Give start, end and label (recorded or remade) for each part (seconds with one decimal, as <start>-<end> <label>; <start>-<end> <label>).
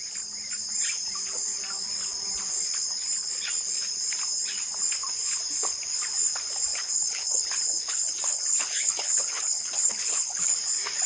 0.0-6.7 recorded; 6.7-10.5 remade; 10.5-11.1 recorded